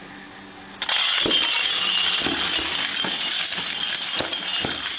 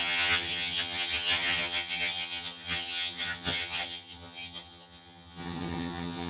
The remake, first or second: second